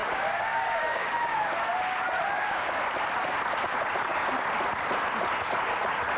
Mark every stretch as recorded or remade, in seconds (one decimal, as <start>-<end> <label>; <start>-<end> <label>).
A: 0.0-1.5 remade; 1.5-2.3 recorded; 2.3-2.8 remade; 2.8-6.2 recorded